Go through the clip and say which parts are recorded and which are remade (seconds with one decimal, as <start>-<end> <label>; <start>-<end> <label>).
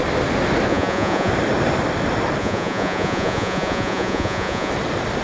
0.0-0.7 recorded; 0.7-1.3 remade; 1.3-2.4 recorded; 2.4-4.7 remade; 4.7-5.2 recorded